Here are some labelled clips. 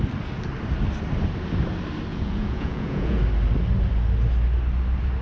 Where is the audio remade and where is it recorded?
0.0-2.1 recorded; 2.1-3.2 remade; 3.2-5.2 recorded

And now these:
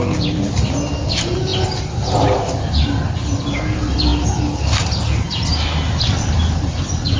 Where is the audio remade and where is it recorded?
0.0-7.2 recorded

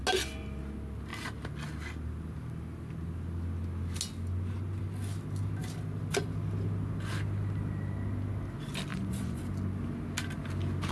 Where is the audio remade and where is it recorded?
0.0-8.9 recorded; 8.9-9.4 remade; 9.4-10.9 recorded

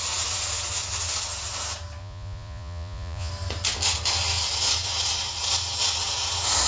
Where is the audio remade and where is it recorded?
0.0-2.0 recorded; 2.0-3.3 remade; 3.3-6.7 recorded

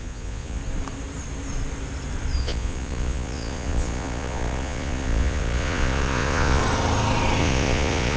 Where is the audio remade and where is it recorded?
0.0-0.6 remade; 0.6-2.4 recorded; 2.4-6.6 remade; 6.6-7.4 recorded; 7.4-8.2 remade

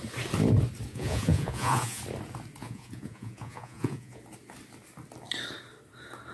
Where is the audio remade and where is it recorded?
0.0-0.9 recorded; 0.9-2.0 remade; 2.0-2.6 recorded; 2.6-4.2 remade; 4.2-6.3 recorded

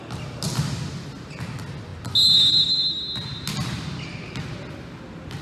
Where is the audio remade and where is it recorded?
0.0-5.4 recorded

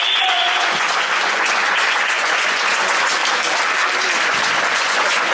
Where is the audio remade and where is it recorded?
0.0-3.2 remade; 3.2-4.2 recorded; 4.2-5.3 remade